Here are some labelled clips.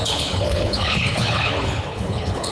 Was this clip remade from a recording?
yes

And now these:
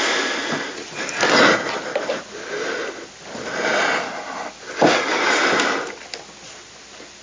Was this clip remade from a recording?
no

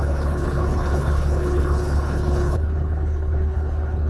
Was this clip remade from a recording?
yes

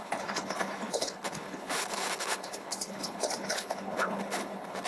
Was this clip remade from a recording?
yes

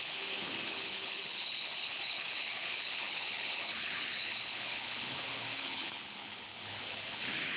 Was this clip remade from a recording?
yes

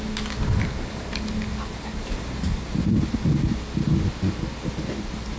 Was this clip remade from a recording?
no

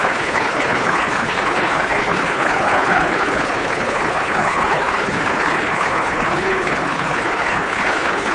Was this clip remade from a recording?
yes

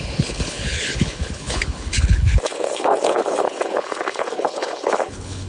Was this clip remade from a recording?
yes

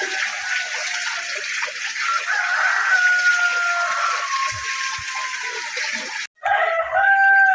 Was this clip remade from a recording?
no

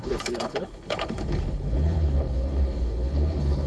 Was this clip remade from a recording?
yes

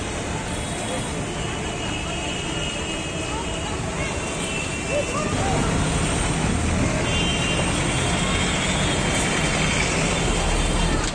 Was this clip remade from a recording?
no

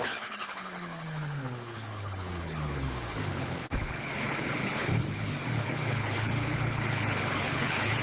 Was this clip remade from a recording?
yes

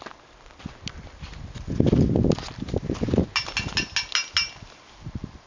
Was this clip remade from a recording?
no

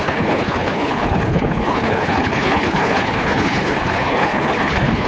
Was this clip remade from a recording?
yes